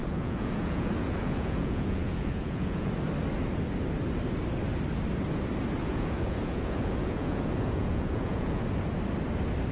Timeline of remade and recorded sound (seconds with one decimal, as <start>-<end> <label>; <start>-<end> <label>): 0.0-2.9 remade; 2.9-5.8 recorded; 5.8-8.6 remade; 8.6-9.7 recorded